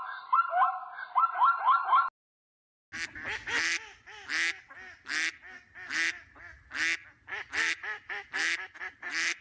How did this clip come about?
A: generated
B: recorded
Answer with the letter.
B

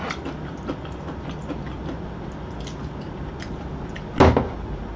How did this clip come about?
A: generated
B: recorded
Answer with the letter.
B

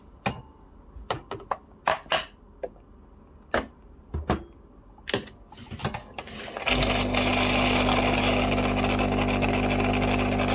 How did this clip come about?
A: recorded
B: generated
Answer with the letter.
A